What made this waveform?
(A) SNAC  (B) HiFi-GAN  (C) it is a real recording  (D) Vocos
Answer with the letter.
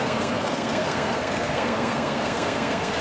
A